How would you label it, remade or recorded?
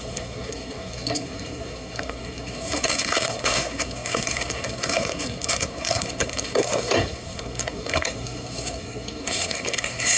remade